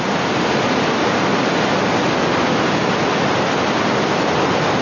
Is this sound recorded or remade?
recorded